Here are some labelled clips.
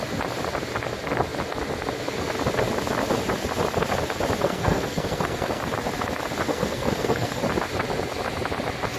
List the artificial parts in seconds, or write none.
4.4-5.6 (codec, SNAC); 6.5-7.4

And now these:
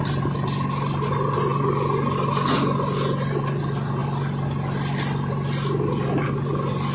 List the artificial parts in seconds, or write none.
none

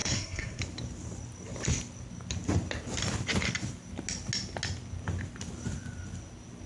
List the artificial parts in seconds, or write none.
0.0-0.6 (codec, SNAC)

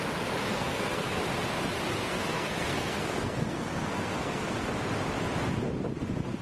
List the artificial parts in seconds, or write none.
0.5-1.2 (codec, SNAC); 2.0-4.7

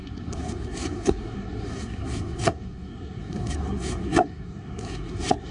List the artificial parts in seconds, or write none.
0.0-5.5 (codec, SNAC)